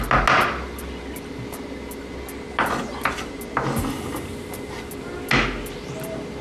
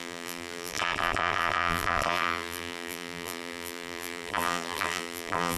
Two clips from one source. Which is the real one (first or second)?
first